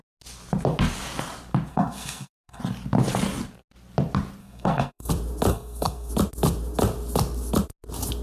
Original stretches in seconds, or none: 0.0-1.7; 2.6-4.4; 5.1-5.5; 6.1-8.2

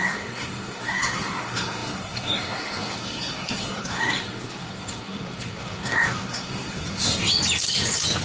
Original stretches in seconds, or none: 7.3-8.2

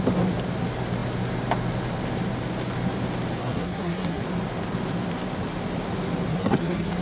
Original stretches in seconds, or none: 0.0-3.4; 4.2-6.3

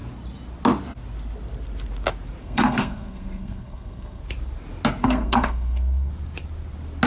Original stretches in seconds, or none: 0.0-2.4; 4.2-5.0; 6.1-7.1